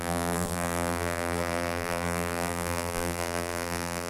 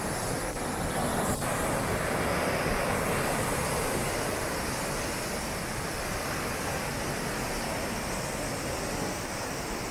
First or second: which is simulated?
first